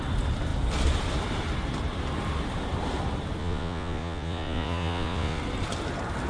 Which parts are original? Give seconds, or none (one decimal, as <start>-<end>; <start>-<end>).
0.0-3.4; 5.4-6.3